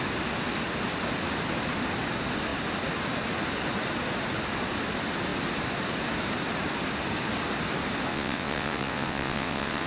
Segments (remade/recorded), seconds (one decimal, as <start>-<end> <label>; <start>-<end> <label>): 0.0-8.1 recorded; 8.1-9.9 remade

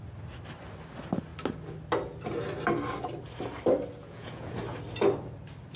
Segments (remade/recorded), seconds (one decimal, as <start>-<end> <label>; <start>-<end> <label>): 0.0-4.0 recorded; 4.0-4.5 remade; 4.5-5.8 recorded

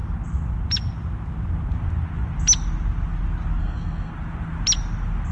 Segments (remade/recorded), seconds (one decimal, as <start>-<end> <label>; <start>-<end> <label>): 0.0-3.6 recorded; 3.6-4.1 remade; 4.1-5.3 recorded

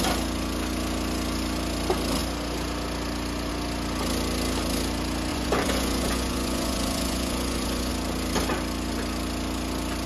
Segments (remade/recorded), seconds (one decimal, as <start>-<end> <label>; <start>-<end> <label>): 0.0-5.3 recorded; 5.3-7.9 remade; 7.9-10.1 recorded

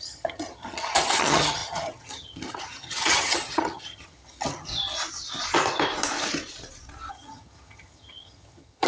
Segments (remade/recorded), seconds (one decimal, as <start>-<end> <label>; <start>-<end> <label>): 0.0-4.7 remade; 4.7-7.1 recorded; 7.1-8.9 remade